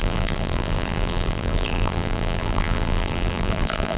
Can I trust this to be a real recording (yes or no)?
no